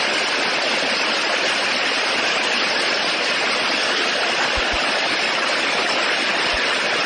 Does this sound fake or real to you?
real